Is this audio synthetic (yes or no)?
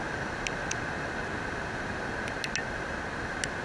no